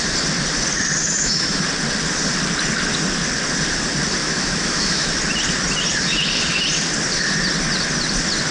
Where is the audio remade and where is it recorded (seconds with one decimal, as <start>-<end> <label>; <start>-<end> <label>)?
0.0-1.0 recorded; 1.0-1.6 remade; 1.6-4.2 recorded; 4.2-5.1 remade; 5.1-8.5 recorded